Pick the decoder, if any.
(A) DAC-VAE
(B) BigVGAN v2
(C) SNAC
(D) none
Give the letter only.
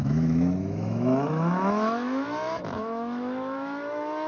A